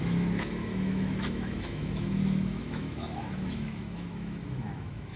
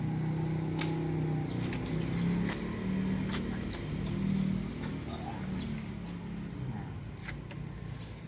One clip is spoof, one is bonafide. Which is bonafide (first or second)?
second